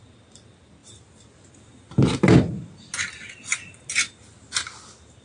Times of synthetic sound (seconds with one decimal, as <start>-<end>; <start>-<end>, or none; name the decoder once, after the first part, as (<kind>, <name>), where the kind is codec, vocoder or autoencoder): none